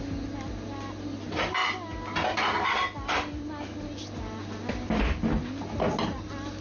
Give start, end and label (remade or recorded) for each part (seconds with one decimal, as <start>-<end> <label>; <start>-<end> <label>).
0.0-1.6 recorded; 1.6-3.4 remade; 3.4-4.4 recorded; 4.4-4.9 remade; 4.9-6.6 recorded